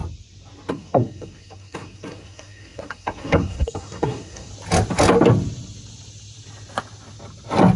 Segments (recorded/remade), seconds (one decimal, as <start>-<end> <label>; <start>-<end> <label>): 0.0-0.7 recorded; 0.7-4.5 remade; 4.5-7.8 recorded